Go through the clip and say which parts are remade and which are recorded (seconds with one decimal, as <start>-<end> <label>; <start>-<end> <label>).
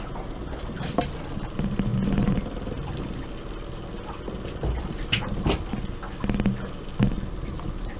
0.0-8.0 recorded